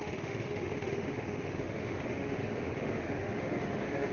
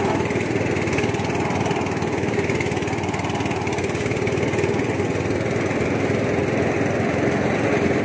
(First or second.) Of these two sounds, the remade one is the first